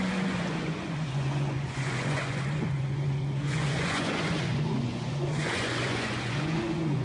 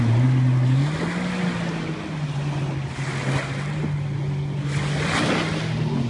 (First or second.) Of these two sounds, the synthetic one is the first